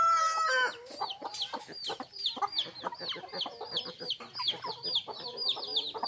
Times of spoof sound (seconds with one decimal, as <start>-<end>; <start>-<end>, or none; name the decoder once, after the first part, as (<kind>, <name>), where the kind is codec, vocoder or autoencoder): none